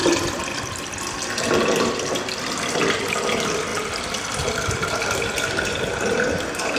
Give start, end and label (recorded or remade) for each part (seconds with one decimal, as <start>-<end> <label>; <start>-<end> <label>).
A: 0.0-0.6 recorded; 0.6-6.8 remade